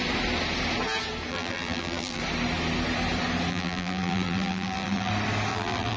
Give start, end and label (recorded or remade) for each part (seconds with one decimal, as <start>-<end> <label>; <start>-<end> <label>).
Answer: 0.0-1.3 recorded; 1.3-2.2 remade; 2.2-3.5 recorded; 3.5-5.1 remade; 5.1-5.5 recorded; 5.5-6.0 remade